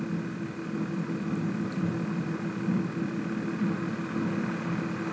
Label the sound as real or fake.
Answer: real